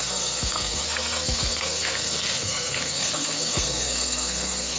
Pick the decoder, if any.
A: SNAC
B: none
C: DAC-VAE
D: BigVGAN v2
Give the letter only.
A